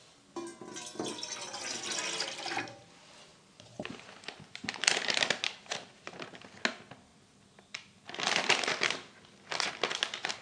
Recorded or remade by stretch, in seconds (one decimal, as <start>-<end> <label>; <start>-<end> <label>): 0.0-3.3 recorded; 3.3-5.2 remade; 5.2-7.1 recorded; 7.1-8.1 remade; 8.1-10.4 recorded